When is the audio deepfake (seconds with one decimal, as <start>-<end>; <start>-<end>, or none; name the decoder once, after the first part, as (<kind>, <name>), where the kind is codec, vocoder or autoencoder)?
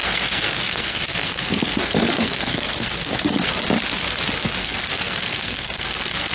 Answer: 0.0-3.5 (codec, SNAC); 4.6-6.3